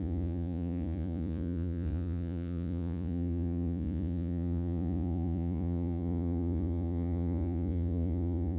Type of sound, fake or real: fake